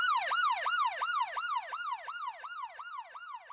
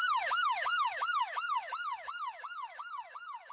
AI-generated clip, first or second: second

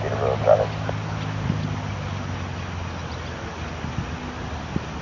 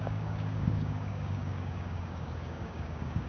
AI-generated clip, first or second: second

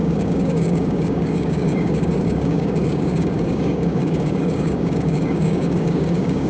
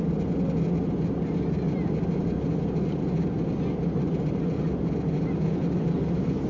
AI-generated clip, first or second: first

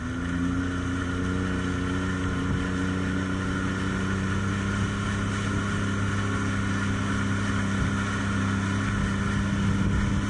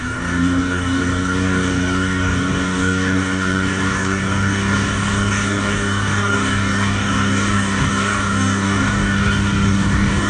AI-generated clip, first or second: second